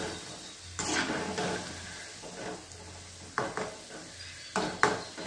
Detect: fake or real real